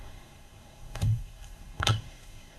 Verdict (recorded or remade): remade